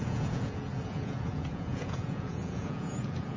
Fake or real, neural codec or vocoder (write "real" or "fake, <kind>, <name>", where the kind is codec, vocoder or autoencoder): fake, vocoder, Vocos